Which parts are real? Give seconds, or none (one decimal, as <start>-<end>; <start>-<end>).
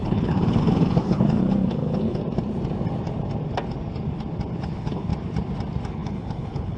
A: 2.2-4.6; 5.1-5.9